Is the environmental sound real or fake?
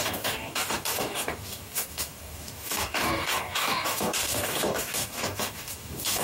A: fake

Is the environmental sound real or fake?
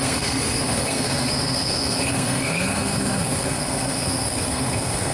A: fake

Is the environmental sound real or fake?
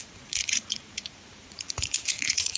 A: fake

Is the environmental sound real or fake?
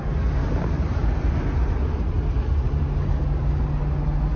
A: real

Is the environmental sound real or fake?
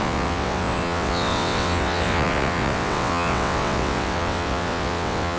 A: fake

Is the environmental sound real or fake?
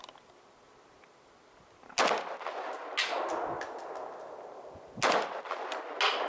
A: real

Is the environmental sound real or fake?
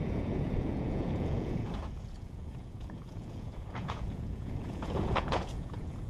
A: fake